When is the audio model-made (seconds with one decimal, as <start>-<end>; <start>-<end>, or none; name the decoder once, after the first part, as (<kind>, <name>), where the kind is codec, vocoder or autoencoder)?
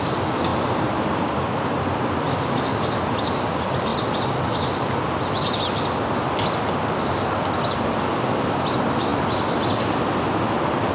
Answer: 0.5-2.4 (vocoder, BigVGAN v2)